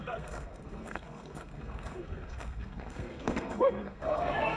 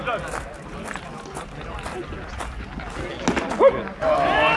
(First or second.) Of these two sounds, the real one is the second